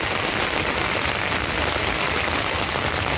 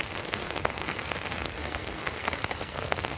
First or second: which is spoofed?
second